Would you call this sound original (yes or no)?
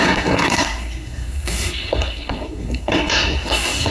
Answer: no